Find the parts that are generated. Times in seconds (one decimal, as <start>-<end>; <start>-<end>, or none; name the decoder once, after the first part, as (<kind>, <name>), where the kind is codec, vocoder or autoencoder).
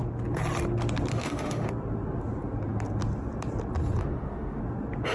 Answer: 1.1-1.7 (autoencoder, DAC-VAE); 4.0-4.6